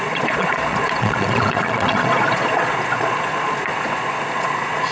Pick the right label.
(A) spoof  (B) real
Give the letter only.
A